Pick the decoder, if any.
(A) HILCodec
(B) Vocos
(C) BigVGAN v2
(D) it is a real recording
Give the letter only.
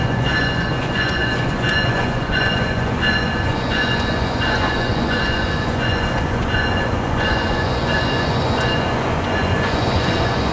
B